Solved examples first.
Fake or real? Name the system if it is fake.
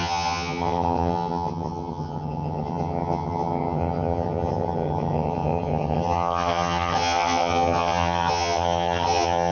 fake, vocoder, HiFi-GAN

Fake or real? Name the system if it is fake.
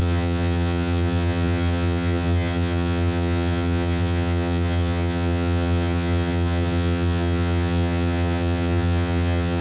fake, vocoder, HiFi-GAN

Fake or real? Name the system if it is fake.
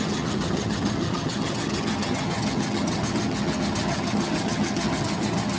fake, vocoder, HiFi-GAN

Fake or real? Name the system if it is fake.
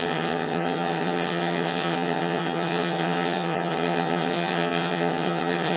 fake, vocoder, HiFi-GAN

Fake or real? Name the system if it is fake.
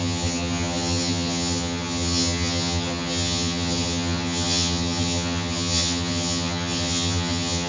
fake, vocoder, HiFi-GAN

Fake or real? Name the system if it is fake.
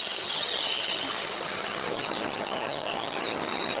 fake, vocoder, HiFi-GAN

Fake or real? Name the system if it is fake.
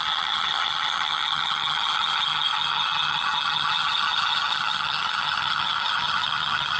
fake, vocoder, HiFi-GAN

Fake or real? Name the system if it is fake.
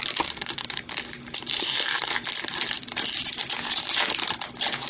real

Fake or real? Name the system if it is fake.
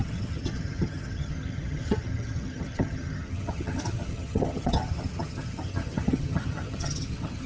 fake, vocoder, HiFi-GAN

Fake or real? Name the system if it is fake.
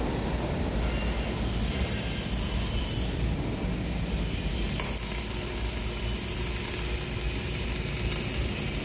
real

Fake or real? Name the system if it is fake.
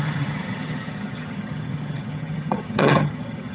fake, vocoder, HiFi-GAN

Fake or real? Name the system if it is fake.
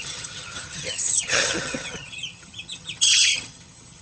fake, vocoder, HiFi-GAN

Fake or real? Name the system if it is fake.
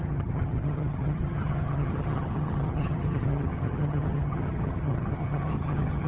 fake, vocoder, HiFi-GAN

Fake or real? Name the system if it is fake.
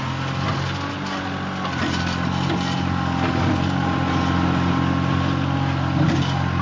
real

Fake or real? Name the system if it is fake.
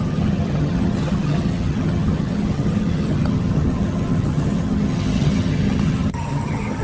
fake, vocoder, HiFi-GAN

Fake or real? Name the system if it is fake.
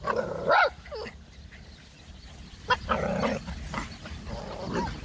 real